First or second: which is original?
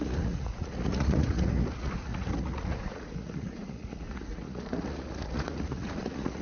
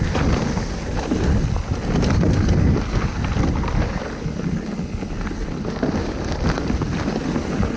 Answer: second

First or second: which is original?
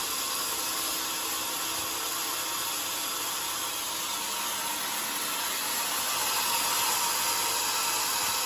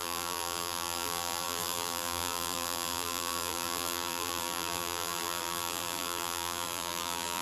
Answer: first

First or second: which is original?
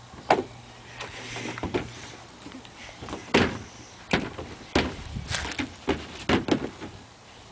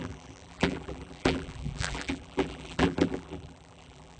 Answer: first